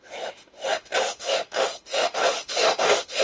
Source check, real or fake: fake